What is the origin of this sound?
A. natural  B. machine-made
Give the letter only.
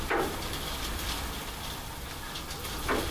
A